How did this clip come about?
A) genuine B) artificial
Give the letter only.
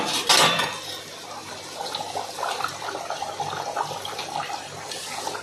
A